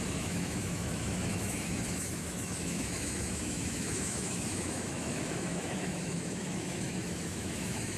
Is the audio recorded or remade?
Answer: remade